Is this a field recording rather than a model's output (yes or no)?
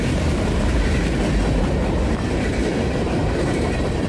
no